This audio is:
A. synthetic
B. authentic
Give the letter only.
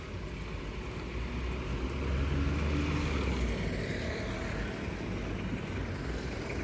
B